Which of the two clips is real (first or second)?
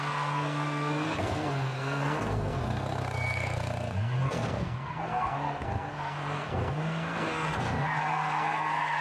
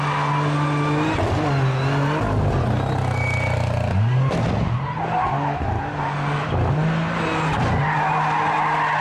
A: second